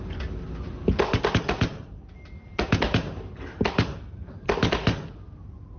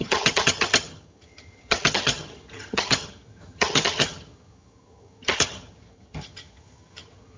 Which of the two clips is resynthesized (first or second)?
second